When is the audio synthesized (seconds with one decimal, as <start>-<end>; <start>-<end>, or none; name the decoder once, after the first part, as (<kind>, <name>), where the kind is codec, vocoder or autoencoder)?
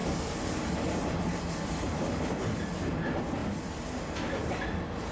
none